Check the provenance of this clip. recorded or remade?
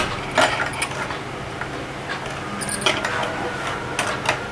recorded